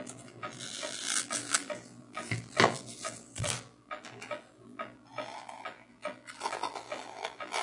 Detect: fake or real fake